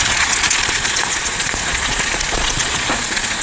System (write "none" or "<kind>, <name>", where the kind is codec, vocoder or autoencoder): vocoder, Vocos